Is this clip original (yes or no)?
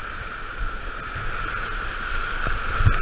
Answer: yes